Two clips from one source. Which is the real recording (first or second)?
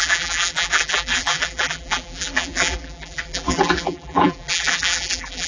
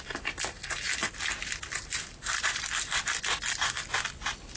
second